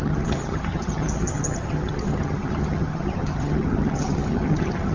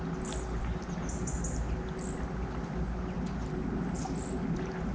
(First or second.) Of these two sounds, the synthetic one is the first